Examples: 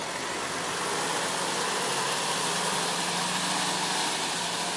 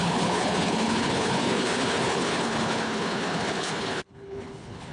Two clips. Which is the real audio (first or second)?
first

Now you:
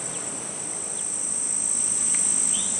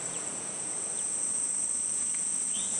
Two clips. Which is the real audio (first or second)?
first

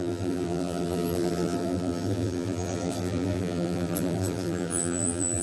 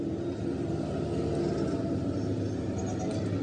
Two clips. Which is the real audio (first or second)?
second